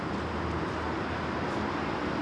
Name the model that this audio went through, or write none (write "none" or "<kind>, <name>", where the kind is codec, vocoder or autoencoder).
none